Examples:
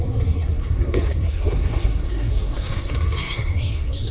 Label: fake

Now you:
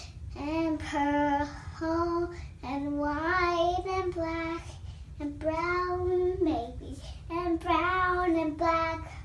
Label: real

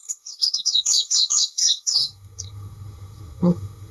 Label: fake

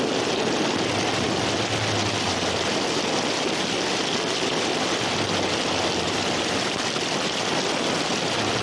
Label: real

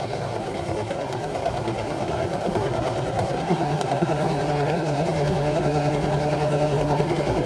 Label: fake